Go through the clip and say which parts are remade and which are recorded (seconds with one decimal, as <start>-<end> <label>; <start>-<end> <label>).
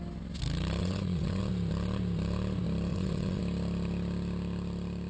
0.0-0.8 recorded; 0.8-1.4 remade; 1.4-2.9 recorded; 2.9-3.4 remade; 3.4-5.1 recorded